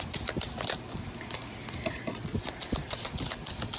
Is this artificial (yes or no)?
no